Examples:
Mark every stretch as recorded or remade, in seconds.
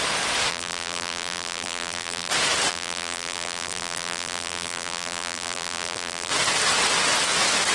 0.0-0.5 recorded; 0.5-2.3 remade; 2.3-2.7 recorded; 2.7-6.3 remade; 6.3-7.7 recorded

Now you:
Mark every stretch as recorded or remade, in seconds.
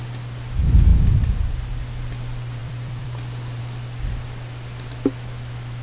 0.0-2.6 recorded; 2.6-3.6 remade; 3.6-5.8 recorded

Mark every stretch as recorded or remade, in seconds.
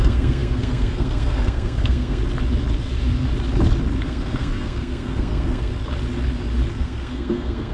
0.0-2.2 remade; 2.2-4.0 recorded; 4.0-5.7 remade; 5.7-6.7 recorded; 6.7-7.7 remade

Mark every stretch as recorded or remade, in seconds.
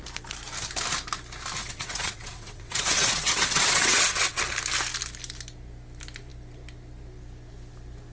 0.0-1.6 recorded; 1.6-4.4 remade; 4.4-8.1 recorded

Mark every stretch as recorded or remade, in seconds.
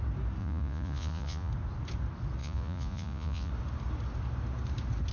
0.0-0.4 recorded; 0.4-1.5 remade; 1.5-2.4 recorded; 2.4-3.5 remade; 3.5-5.1 recorded